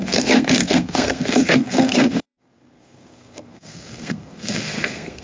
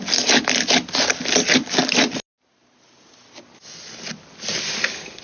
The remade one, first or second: first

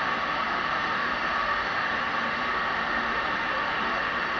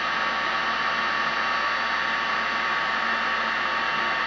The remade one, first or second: first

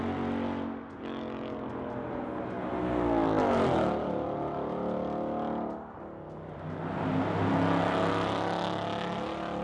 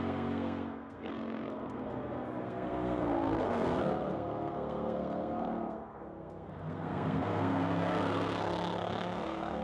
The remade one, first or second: second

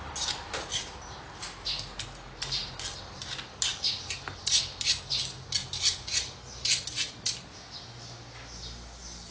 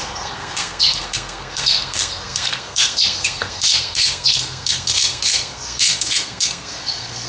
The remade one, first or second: second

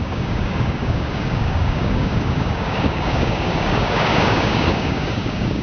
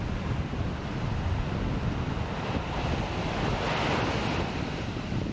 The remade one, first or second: first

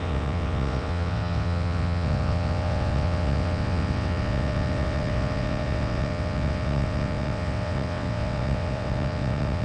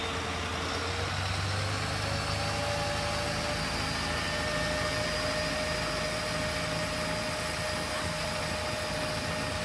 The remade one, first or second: first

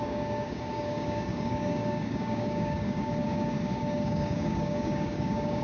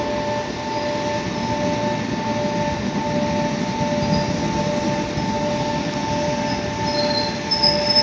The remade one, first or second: first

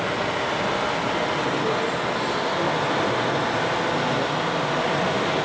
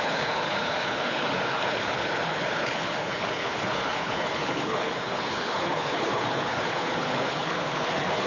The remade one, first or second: second